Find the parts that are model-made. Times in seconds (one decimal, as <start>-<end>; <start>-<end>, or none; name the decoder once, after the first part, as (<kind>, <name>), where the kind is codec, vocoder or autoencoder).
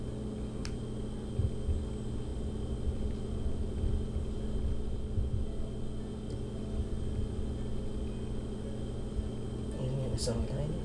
none